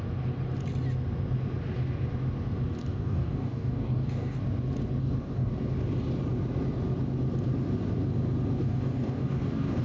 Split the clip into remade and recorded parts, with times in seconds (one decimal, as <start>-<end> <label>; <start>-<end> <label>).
0.0-2.8 recorded; 2.8-4.4 remade; 4.4-5.0 recorded; 5.0-5.5 remade; 5.5-8.6 recorded; 8.6-9.8 remade